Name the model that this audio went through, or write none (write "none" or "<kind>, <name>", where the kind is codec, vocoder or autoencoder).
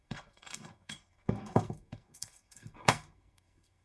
codec, SNAC